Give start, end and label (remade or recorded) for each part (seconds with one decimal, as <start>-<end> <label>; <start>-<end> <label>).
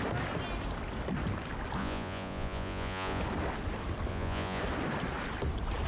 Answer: 0.0-1.8 recorded; 1.8-3.2 remade; 3.2-4.1 recorded; 4.1-4.6 remade; 4.6-5.9 recorded